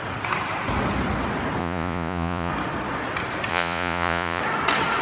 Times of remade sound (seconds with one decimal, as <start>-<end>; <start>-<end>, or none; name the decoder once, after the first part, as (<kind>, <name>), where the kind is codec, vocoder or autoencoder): 1.6-2.5 (vocoder, Vocos); 3.5-4.4